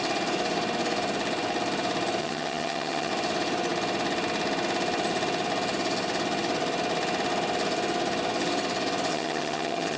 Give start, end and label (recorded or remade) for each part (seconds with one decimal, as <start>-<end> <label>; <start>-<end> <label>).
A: 0.0-2.2 recorded; 2.2-3.1 remade; 3.1-9.1 recorded; 9.1-10.0 remade

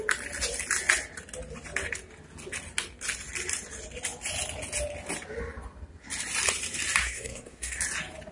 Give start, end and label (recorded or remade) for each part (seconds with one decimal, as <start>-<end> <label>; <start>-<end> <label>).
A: 0.0-7.0 recorded; 7.0-7.8 remade; 7.8-8.3 recorded

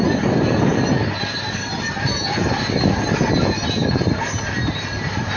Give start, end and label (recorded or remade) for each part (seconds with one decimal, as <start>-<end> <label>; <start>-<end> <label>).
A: 0.0-5.4 recorded

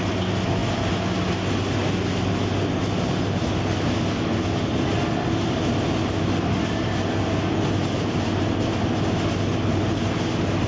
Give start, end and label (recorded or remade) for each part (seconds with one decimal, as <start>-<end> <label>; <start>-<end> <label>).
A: 0.0-10.7 recorded